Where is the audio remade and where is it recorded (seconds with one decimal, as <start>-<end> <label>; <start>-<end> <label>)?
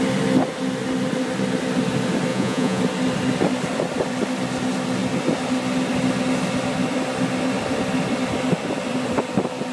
0.0-2.3 recorded; 2.3-2.8 remade; 2.8-9.7 recorded